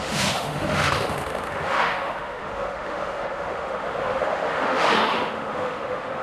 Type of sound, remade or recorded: remade